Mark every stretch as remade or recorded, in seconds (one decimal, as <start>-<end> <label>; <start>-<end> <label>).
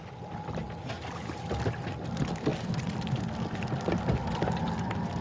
0.0-5.2 recorded